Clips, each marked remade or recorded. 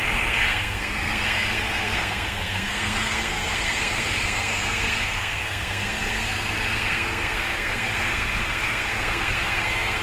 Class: remade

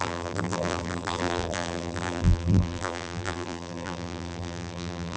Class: remade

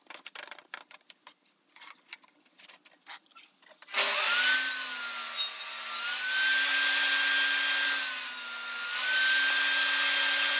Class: recorded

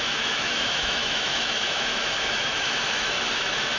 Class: remade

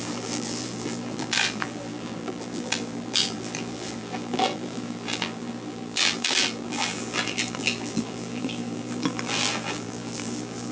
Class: remade